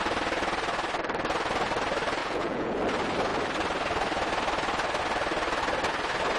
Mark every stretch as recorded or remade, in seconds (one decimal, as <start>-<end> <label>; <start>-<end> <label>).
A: 0.0-2.2 recorded; 2.2-2.8 remade; 2.8-6.4 recorded